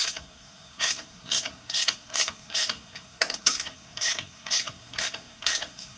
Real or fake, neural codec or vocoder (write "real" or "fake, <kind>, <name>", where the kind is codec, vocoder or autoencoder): fake, codec, SNAC